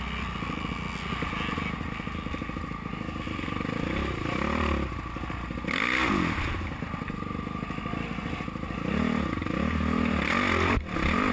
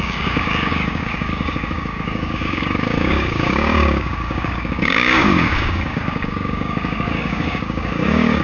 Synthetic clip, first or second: second